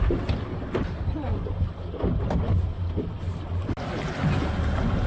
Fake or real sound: real